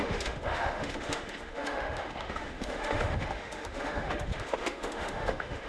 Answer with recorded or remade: remade